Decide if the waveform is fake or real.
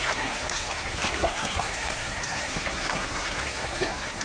fake